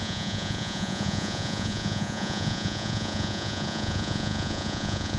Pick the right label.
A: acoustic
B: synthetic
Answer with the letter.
B